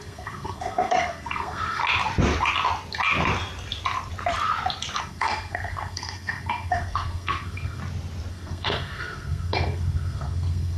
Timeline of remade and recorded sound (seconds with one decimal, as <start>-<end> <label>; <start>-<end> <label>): 0.0-1.8 remade; 1.8-5.0 recorded; 5.0-7.8 remade; 7.8-8.3 recorded; 8.3-10.8 remade